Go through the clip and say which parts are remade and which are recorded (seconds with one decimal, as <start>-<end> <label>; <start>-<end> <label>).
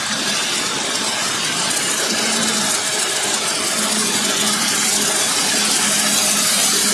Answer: 0.0-4.0 recorded; 4.0-4.6 remade; 4.6-6.9 recorded